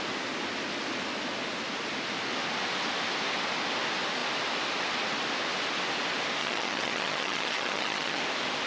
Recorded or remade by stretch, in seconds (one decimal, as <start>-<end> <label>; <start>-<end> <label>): 0.0-6.4 recorded; 6.4-8.2 remade; 8.2-8.7 recorded